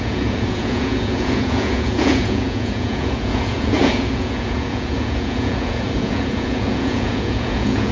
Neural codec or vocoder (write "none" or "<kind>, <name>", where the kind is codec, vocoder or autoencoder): vocoder, Vocos